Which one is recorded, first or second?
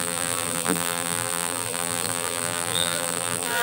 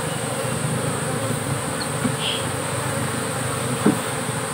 second